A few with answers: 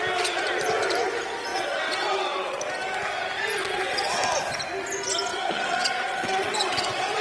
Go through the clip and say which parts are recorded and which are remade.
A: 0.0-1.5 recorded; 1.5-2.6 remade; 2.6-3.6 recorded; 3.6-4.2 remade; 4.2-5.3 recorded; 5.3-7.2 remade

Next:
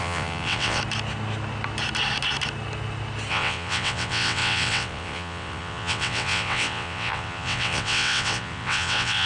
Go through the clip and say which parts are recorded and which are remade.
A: 0.0-0.8 remade; 0.8-3.3 recorded; 3.3-9.3 remade

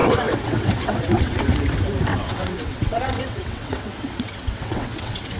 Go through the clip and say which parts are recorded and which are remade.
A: 0.0-1.5 remade; 1.5-2.1 recorded; 2.1-5.4 remade

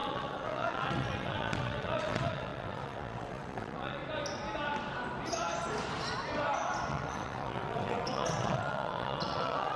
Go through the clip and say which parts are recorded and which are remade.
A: 0.0-4.0 remade; 4.0-6.9 recorded; 6.9-9.8 remade